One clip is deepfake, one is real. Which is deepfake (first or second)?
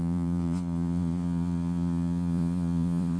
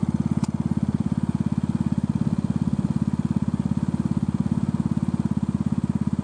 first